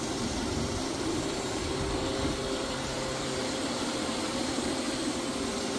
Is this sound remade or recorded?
remade